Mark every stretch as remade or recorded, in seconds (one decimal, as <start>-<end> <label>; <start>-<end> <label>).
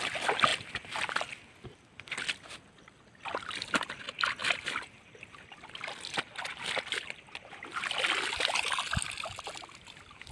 0.0-10.3 recorded